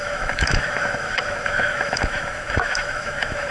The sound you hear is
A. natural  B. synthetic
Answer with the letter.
B